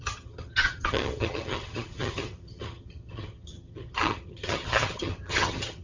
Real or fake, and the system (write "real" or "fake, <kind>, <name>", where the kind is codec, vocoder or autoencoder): fake, vocoder, HiFi-GAN